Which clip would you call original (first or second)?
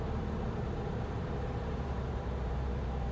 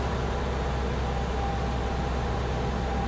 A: second